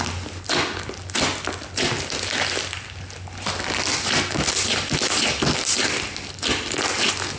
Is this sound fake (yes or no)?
no